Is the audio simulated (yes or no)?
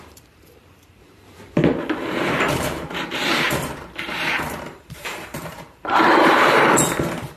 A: yes